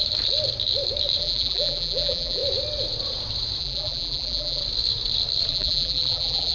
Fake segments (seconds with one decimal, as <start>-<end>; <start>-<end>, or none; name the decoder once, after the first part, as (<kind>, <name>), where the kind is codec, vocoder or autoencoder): 1.2-2.4 (vocoder, BigVGAN v2); 3.6-4.6; 5.5-6.5